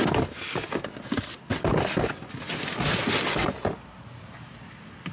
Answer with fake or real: real